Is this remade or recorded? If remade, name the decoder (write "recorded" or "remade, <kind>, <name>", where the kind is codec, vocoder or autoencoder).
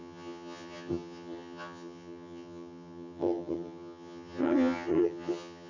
remade, vocoder, HiFi-GAN